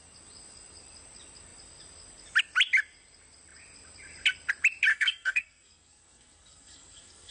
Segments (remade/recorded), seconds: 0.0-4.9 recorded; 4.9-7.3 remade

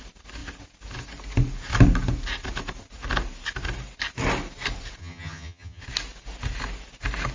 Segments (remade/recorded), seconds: 0.0-5.0 recorded; 5.0-5.8 remade; 5.8-7.3 recorded

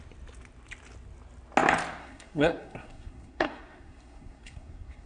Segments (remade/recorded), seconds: 0.0-2.0 recorded; 2.0-5.1 remade